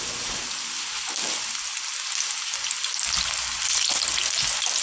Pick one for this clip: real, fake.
real